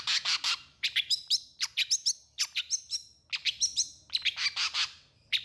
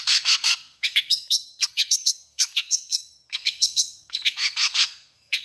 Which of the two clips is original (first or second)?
first